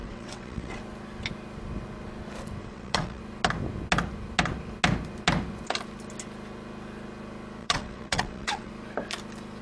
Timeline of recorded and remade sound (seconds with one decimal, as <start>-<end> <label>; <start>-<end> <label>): 0.0-0.8 remade; 0.8-2.6 recorded; 2.6-3.2 remade; 3.2-7.6 recorded; 7.6-8.7 remade; 8.7-9.6 recorded